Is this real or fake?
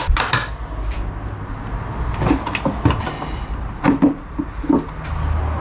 real